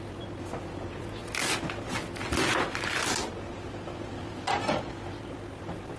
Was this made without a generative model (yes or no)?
yes